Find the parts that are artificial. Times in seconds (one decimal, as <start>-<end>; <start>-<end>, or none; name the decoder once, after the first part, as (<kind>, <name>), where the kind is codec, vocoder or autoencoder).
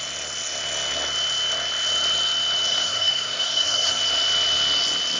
2.7-4.0 (codec, SNAC)